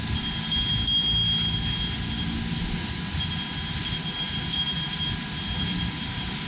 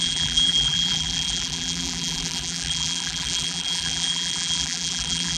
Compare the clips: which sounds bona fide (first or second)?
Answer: first